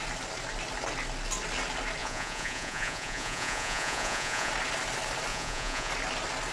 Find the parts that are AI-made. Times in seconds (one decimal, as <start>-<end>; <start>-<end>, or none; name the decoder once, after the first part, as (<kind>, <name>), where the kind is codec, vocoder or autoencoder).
2.0-4.5 (vocoder, Vocos); 5.3-5.9